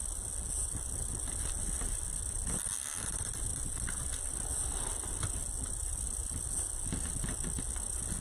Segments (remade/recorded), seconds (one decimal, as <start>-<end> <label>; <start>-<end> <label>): 0.0-8.2 recorded